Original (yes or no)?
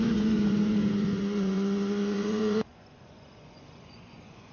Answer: no